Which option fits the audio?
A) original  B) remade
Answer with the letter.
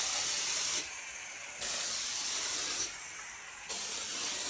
B